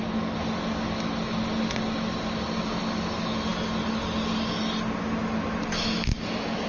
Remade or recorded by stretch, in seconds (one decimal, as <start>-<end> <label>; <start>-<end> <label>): 0.0-6.7 recorded